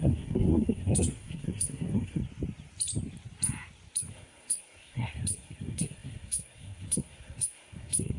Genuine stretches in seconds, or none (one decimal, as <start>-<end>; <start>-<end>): 2.2-4.1

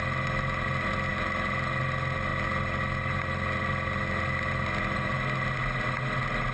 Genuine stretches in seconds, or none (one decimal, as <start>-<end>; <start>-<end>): 0.0-6.5